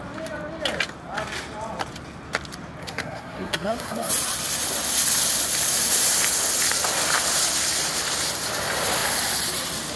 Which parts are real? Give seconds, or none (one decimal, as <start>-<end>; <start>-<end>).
0.0-2.8; 4.1-10.0